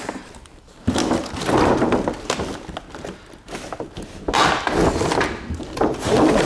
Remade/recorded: recorded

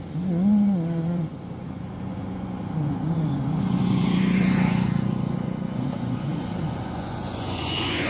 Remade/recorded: remade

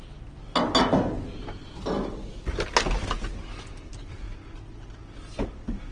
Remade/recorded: recorded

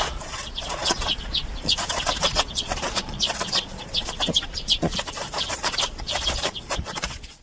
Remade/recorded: remade